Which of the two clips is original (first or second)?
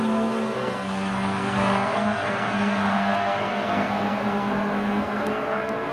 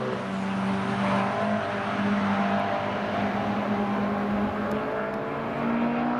second